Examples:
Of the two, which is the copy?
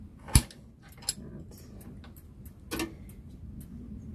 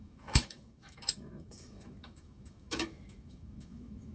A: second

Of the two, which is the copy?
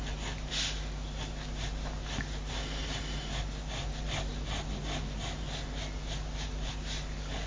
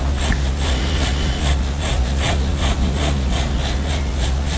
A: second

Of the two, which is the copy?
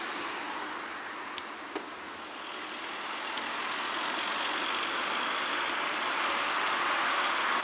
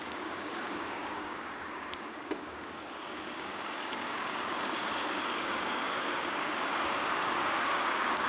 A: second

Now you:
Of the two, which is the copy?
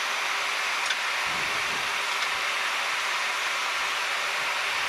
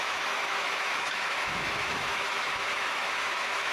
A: second